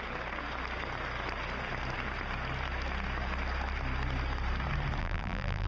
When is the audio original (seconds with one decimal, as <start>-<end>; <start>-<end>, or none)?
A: 0.0-5.0

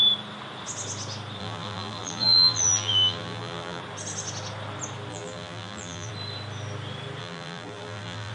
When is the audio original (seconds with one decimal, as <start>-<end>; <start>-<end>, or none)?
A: 0.0-1.4; 3.8-5.1; 6.1-7.2